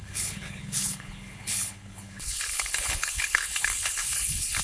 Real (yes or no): no